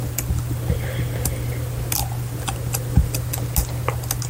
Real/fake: real